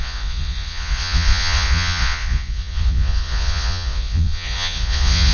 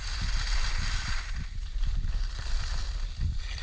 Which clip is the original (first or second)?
second